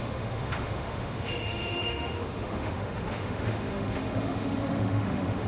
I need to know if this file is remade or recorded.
remade